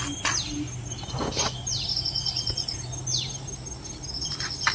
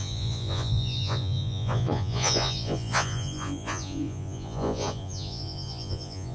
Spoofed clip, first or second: second